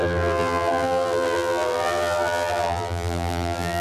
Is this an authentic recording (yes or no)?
no